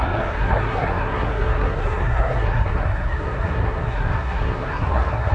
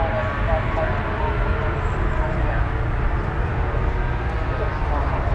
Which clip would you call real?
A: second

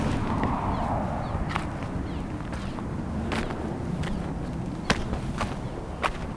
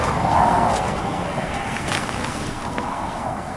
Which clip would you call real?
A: first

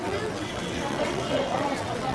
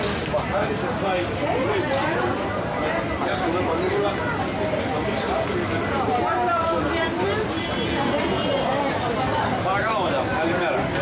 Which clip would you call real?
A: second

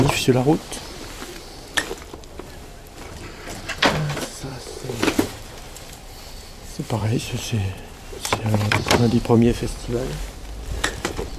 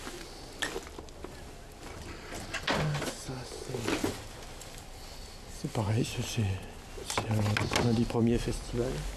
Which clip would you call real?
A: second